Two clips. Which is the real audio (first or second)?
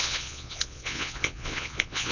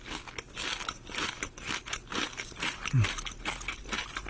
second